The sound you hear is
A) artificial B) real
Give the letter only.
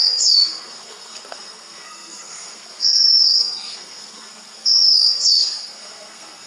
A